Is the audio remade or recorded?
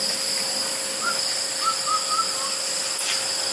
recorded